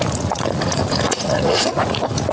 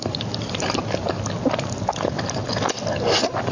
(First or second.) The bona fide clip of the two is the second